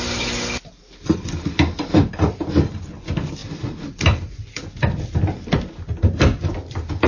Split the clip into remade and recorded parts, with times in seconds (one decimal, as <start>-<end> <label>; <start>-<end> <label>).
0.0-7.1 recorded